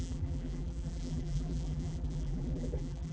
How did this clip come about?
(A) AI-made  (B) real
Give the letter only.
A